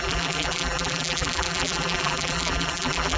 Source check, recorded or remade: remade